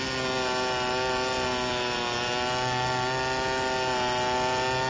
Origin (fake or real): real